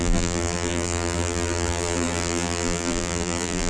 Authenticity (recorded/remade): remade